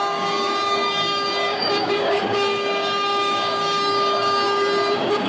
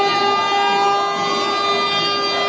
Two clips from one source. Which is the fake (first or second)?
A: first